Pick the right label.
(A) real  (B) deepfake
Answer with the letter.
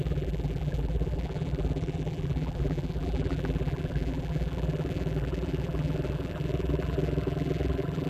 B